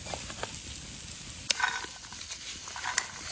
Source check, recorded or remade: recorded